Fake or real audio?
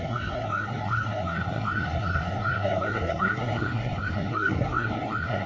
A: fake